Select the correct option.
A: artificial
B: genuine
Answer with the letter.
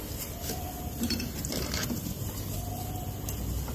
B